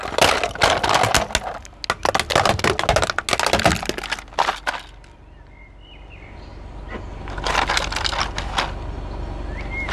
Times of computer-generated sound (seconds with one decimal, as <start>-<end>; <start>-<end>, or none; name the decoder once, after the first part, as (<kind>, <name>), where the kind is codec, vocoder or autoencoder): none